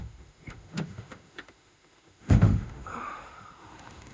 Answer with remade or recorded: remade